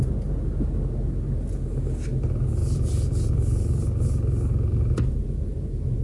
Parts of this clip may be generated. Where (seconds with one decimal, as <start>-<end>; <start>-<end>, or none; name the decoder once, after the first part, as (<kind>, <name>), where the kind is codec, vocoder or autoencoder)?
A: 2.6-6.0 (vocoder, BigVGAN v2)